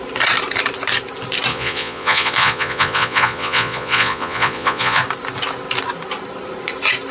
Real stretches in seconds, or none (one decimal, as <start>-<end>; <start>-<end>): 0.0-1.5; 5.0-7.1